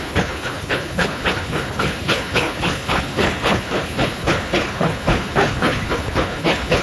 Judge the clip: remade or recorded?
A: remade